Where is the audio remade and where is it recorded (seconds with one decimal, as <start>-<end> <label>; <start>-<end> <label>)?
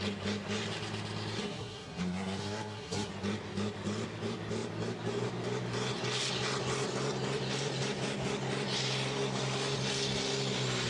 0.0-1.4 recorded; 1.4-3.1 remade; 3.1-10.9 recorded